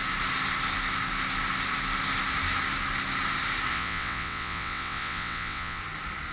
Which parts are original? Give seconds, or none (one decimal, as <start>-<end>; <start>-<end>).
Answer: 0.0-3.7; 5.8-6.3